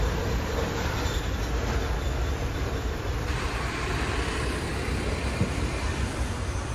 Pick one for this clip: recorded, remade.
remade